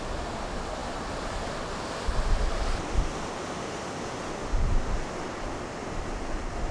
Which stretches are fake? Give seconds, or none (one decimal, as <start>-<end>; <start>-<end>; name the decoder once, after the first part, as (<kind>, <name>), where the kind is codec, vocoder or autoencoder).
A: none